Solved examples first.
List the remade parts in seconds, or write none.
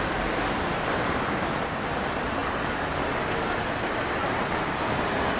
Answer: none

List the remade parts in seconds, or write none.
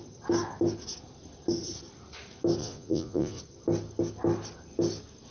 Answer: 2.6-3.4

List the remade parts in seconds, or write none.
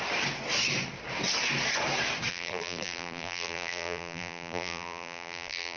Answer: 2.3-5.8